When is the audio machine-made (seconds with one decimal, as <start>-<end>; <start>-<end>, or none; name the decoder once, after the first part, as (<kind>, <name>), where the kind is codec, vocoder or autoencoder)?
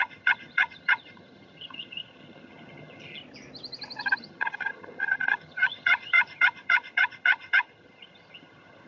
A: 0.0-3.2 (vocoder, HiFi-GAN); 4.2-8.9